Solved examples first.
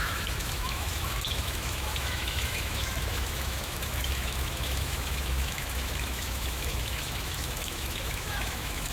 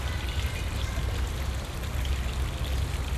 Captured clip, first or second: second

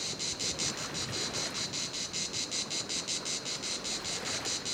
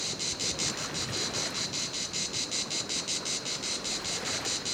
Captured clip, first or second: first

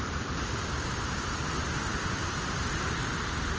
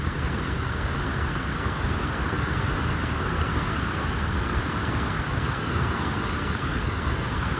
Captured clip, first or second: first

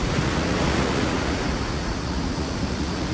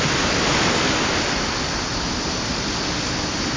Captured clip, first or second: second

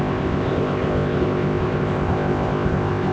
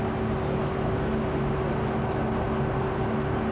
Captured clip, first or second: second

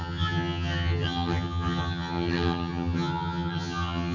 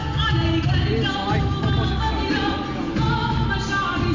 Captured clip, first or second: second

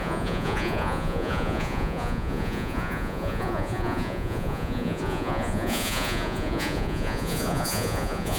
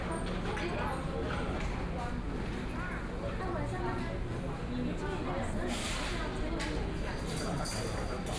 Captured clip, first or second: second